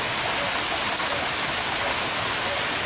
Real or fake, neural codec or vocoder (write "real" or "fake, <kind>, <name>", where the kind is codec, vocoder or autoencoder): real